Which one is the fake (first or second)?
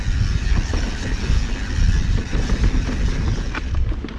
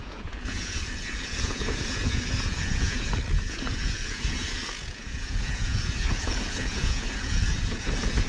second